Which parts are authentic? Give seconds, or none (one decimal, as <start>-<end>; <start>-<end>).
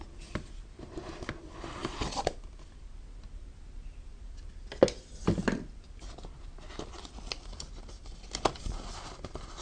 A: 0.0-9.6